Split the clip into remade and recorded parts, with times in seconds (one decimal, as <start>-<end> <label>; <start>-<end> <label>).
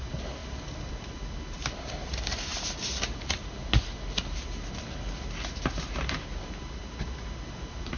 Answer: 0.0-8.0 recorded